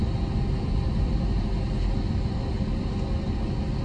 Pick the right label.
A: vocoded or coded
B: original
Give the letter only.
B